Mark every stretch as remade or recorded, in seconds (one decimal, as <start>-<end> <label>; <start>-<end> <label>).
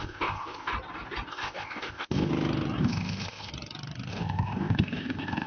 0.0-0.7 remade; 0.7-1.3 recorded; 1.3-2.3 remade; 2.3-2.8 recorded; 2.8-3.5 remade; 3.5-4.1 recorded; 4.1-5.5 remade